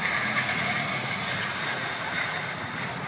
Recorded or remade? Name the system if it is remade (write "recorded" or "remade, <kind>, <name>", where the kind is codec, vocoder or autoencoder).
remade, vocoder, Vocos